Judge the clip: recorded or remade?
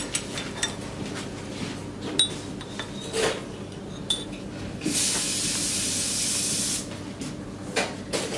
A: recorded